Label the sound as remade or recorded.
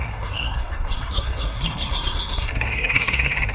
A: remade